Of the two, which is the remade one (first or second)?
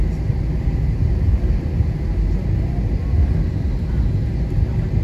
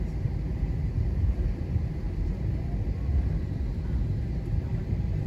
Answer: second